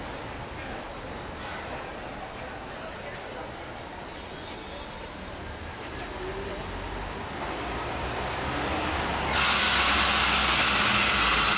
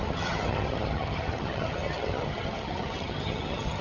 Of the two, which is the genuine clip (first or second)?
first